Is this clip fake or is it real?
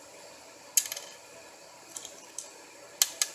real